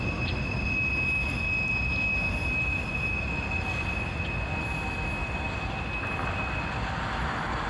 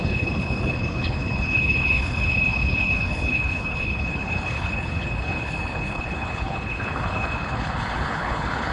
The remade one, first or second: second